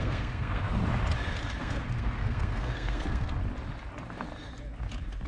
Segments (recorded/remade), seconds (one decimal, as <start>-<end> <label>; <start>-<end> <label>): 0.0-0.8 remade; 0.8-1.6 recorded; 1.6-3.4 remade; 3.4-5.3 recorded

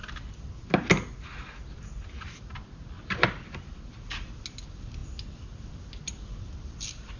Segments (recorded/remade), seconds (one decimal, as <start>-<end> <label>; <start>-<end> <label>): 0.0-7.2 recorded

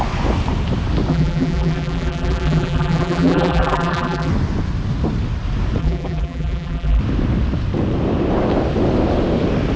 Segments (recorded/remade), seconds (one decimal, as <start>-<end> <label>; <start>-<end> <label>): 0.0-1.1 recorded; 1.1-4.3 remade; 4.3-5.8 recorded; 5.8-7.0 remade; 7.0-9.8 recorded